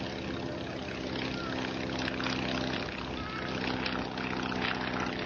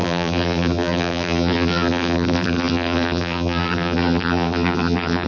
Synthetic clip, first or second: second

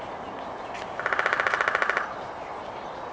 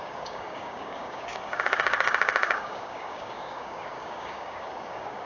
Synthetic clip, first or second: second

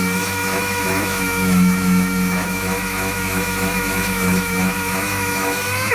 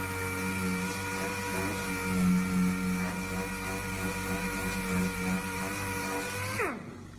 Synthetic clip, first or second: first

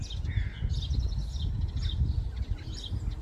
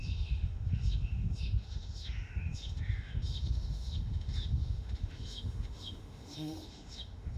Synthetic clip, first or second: second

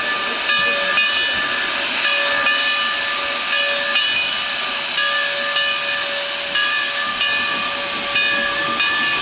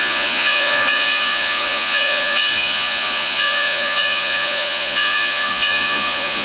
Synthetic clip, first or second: second